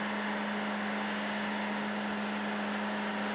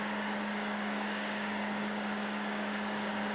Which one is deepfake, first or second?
second